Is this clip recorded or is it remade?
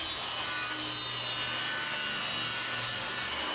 recorded